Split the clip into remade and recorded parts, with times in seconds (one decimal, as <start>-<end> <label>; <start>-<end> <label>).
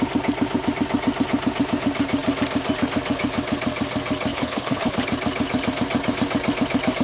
0.0-4.3 recorded; 4.3-4.9 remade; 4.9-7.0 recorded